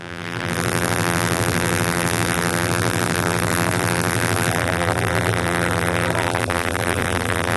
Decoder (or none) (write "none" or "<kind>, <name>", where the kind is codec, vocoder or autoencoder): vocoder, BigVGAN v2